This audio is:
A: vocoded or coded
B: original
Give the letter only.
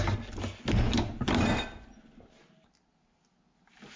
B